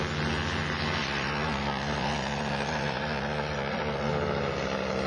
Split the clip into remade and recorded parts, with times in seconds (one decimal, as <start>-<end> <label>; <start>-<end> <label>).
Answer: 0.0-1.0 recorded; 1.0-4.1 remade; 4.1-5.1 recorded